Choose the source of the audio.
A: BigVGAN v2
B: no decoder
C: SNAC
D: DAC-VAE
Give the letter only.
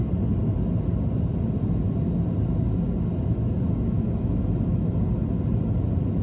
B